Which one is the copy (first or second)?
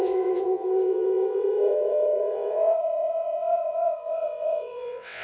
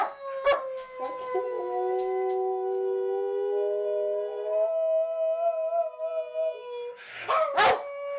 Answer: first